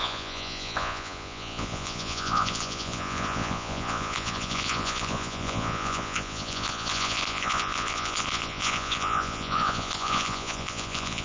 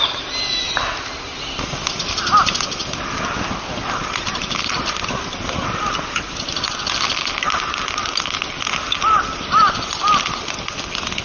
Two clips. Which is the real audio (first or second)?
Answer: second